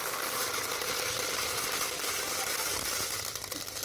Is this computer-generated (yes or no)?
yes